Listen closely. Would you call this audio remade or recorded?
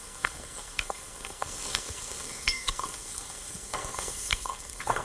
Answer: remade